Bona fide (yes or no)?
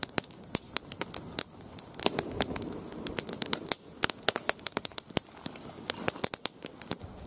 yes